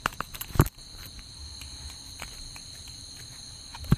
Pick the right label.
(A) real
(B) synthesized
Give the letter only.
A